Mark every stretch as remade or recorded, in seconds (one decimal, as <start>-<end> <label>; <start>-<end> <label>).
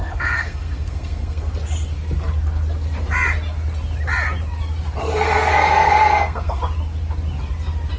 0.0-1.5 remade; 1.5-5.0 recorded; 5.0-6.6 remade; 6.6-8.0 recorded